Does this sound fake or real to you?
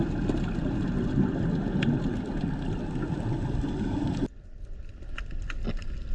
real